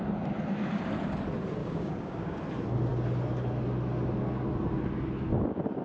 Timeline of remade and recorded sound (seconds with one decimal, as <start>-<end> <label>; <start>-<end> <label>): 0.0-1.6 recorded; 1.6-2.4 remade; 2.4-5.8 recorded